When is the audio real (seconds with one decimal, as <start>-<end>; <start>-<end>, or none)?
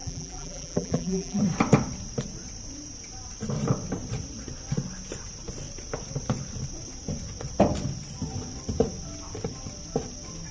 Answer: 1.4-10.5